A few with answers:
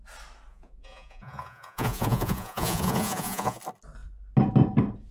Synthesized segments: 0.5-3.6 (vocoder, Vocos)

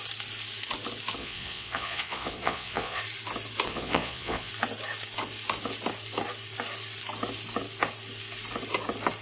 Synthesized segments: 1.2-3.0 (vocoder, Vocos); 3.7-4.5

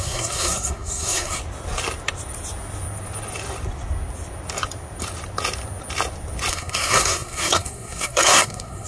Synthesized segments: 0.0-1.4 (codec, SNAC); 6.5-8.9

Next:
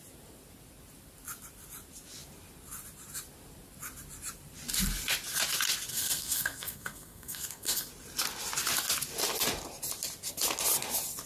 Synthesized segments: 5.9-7.9 (codec, SNAC)